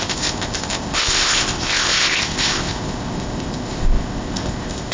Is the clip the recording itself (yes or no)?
no